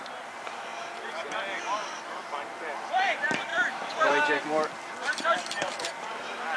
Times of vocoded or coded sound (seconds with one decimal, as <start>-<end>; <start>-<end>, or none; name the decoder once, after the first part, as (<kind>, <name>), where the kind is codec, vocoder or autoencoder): 0.0-0.7 (vocoder, BigVGAN v2); 1.6-6.6